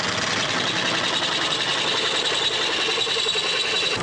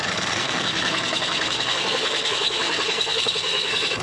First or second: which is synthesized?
second